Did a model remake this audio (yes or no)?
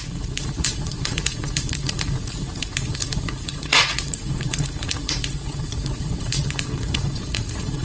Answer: yes